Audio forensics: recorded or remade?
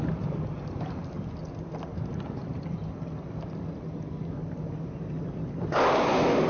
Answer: recorded